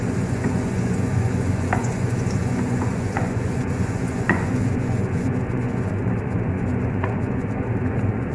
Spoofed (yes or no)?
yes